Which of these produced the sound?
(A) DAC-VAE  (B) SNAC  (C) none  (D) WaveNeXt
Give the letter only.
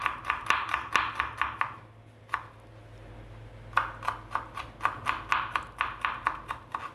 C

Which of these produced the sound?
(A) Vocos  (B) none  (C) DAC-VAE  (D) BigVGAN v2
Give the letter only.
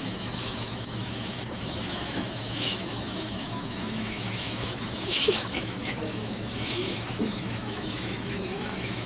C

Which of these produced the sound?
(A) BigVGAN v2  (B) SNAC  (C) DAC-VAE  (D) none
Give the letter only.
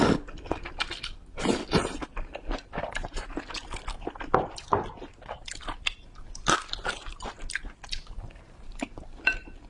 D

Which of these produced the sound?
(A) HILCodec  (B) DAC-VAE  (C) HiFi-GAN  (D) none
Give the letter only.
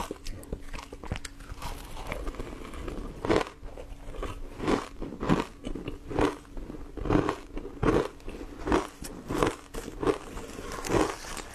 D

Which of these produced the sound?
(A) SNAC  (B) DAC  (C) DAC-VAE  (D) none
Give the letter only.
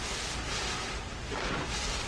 D